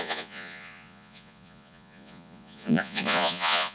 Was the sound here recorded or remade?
remade